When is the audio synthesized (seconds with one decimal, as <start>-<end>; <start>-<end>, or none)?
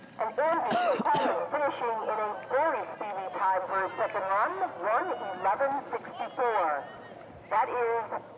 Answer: none